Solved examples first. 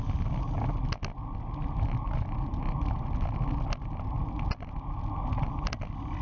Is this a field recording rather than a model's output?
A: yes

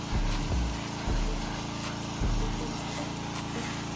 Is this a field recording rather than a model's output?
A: yes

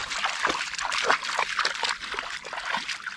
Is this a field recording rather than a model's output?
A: yes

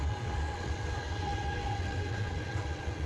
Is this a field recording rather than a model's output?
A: no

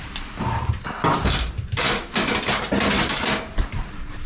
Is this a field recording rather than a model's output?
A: yes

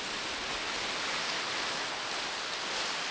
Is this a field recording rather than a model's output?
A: yes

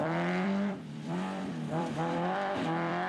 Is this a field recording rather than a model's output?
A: no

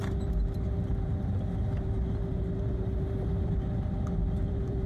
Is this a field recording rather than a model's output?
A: no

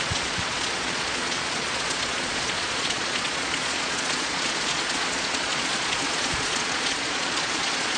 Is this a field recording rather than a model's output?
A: no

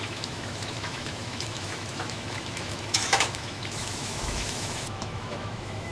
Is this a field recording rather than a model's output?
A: no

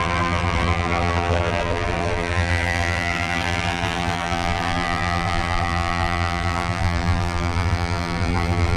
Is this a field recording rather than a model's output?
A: no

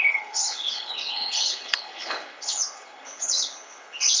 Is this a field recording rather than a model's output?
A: no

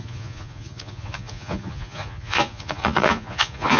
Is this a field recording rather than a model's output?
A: no